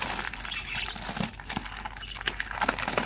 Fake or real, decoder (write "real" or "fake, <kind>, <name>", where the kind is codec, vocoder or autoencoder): real